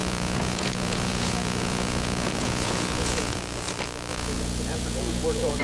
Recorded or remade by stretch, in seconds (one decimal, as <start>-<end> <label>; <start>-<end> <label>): 0.0-3.4 remade; 3.4-4.1 recorded; 4.1-5.6 remade